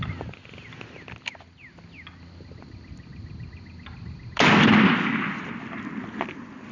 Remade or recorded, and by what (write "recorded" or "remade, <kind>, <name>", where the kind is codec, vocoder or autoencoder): recorded